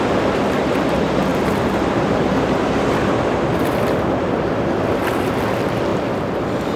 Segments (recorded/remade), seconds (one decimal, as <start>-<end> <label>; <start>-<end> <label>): 0.0-5.9 remade; 5.9-6.8 recorded